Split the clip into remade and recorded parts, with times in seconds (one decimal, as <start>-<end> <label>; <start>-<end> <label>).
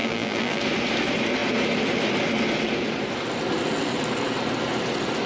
0.0-0.6 remade; 0.6-5.3 recorded